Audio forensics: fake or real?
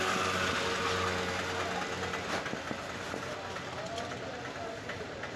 real